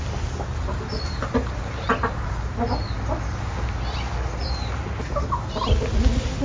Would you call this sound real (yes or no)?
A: yes